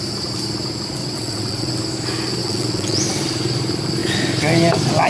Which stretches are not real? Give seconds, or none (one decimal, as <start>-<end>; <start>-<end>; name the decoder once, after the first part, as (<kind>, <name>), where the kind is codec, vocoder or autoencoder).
1.0-1.7 (vocoder, WaveNeXt); 2.4-3.0